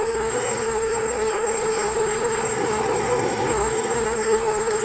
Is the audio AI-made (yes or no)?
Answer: yes